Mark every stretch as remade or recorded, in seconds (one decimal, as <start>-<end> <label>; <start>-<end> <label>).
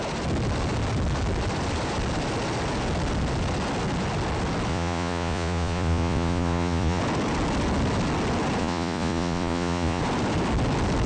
0.0-4.7 recorded; 4.7-7.0 remade; 7.0-8.6 recorded; 8.6-10.0 remade; 10.0-11.1 recorded